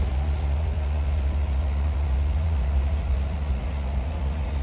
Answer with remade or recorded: remade